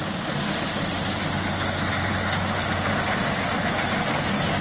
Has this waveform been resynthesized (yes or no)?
no